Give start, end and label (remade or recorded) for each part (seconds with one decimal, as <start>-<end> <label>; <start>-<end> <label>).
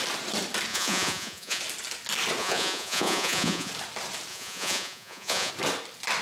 0.0-0.7 recorded; 0.7-1.6 remade; 1.6-2.4 recorded; 2.4-3.7 remade; 3.7-4.3 recorded; 4.3-5.5 remade; 5.5-6.2 recorded